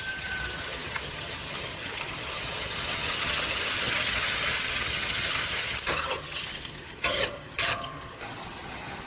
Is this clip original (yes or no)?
no